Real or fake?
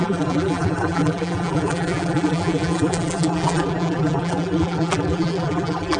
fake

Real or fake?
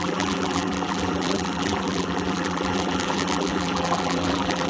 fake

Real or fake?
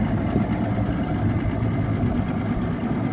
real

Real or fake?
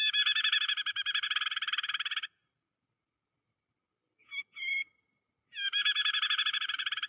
real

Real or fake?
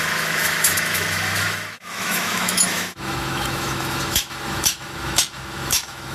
fake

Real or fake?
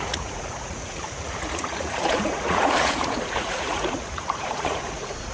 fake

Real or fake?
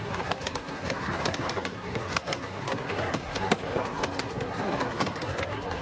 fake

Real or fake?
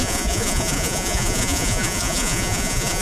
fake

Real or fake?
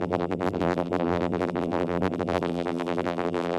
fake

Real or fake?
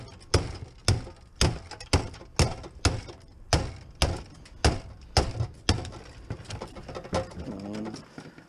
real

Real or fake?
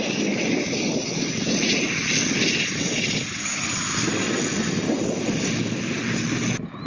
real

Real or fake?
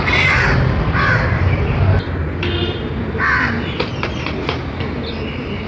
real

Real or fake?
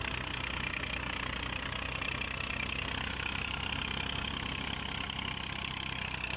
real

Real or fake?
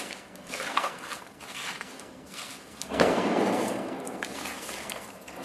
fake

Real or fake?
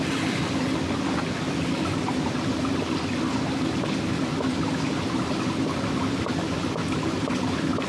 real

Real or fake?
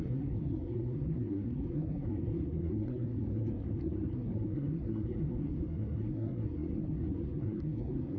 fake